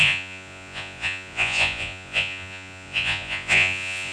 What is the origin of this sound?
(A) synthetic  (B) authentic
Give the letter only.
A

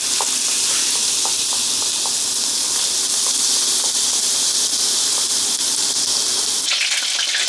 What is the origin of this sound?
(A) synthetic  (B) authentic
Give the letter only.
B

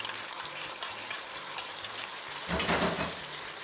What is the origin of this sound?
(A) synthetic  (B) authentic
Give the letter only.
B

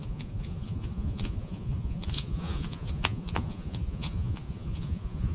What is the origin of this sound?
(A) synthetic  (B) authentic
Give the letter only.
A